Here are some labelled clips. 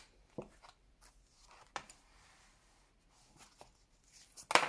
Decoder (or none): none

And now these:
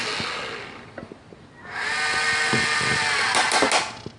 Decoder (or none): none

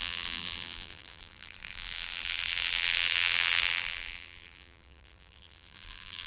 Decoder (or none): vocoder, BigVGAN v2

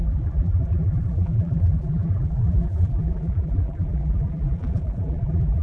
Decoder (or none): vocoder, BigVGAN v2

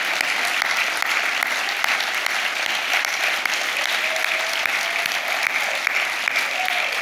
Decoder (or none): none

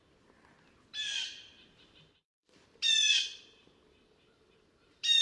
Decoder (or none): vocoder, BigVGAN v2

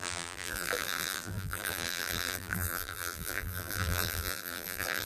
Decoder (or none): vocoder, BigVGAN v2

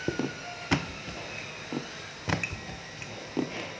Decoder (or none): none